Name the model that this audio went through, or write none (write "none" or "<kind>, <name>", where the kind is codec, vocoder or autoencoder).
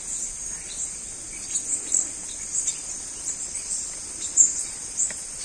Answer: none